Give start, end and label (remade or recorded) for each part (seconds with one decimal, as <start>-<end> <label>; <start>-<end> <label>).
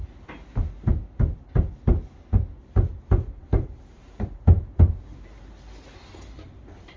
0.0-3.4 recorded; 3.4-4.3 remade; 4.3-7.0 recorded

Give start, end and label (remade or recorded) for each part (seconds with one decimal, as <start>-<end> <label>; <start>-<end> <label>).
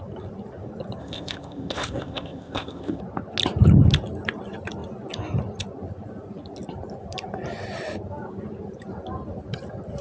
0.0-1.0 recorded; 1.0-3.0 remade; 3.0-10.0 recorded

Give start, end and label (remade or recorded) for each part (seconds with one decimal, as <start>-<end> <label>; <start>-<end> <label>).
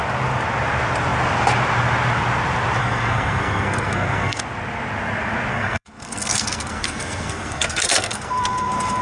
0.0-2.8 recorded; 2.8-4.4 remade; 4.4-5.5 recorded; 5.5-9.0 remade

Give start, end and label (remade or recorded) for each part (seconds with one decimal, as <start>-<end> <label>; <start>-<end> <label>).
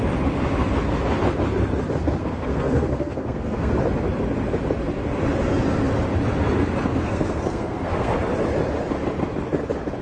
0.0-2.2 recorded; 2.2-3.7 remade; 3.7-6.9 recorded; 6.9-8.2 remade; 8.2-10.0 recorded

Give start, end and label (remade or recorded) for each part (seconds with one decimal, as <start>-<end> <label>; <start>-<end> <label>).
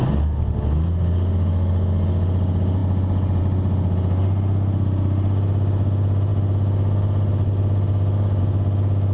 0.0-9.1 recorded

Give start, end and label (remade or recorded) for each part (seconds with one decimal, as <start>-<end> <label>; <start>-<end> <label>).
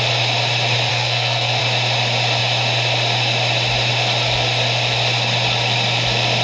0.0-0.9 recorded; 0.9-1.6 remade; 1.6-6.4 recorded